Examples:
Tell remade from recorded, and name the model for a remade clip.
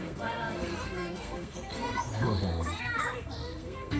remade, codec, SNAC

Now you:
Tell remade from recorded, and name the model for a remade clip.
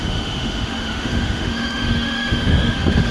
remade, autoencoder, DAC-VAE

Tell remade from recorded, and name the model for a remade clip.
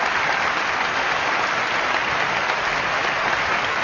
recorded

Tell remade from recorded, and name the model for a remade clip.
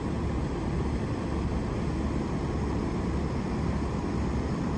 recorded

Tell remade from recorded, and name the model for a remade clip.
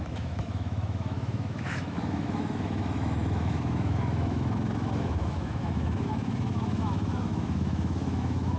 remade, autoencoder, DAC-VAE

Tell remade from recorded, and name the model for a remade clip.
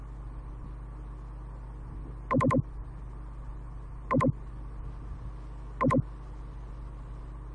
recorded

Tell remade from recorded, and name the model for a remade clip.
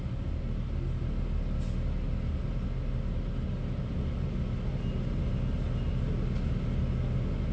recorded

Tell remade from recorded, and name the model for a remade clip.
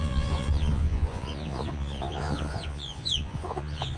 remade, vocoder, Vocos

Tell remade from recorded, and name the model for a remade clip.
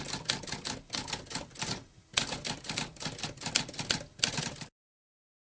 recorded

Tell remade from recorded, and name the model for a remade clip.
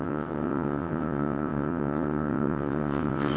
remade, vocoder, WaveNeXt